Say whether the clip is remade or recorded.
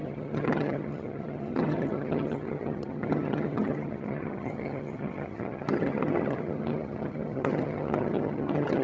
remade